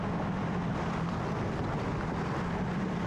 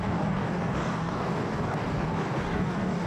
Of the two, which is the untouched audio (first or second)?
first